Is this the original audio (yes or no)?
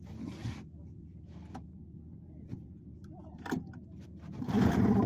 no